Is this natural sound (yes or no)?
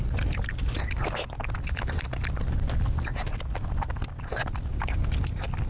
yes